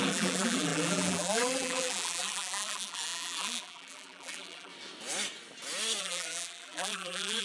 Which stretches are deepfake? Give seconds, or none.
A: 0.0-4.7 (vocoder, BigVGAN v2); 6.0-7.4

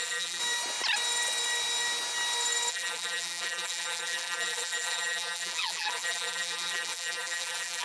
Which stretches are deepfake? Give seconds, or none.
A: 0.0-0.4 (vocoder, BigVGAN v2); 2.7-7.8

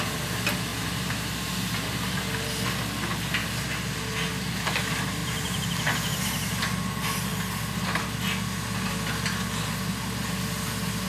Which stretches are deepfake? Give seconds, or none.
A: 0.7-1.5 (vocoder, BigVGAN v2); 5.2-6.2

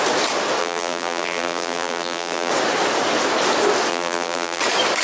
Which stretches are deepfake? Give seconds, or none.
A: 0.6-2.5 (vocoder, BigVGAN v2); 3.9-4.6

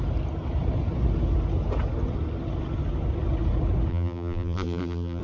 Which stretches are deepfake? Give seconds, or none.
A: 3.9-5.2 (vocoder, BigVGAN v2)

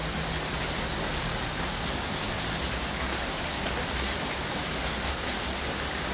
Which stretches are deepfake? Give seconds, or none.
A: 3.1-4.5 (vocoder, BigVGAN v2)

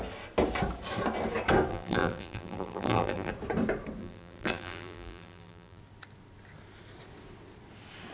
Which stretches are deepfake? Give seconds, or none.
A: 1.7-3.3 (vocoder, BigVGAN v2); 4.0-5.8

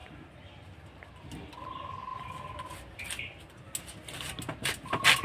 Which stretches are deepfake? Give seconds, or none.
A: none